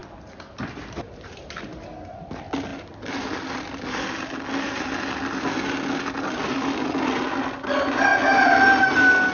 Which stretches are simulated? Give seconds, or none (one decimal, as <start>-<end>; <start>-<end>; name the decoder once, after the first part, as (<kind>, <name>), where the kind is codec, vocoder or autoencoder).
none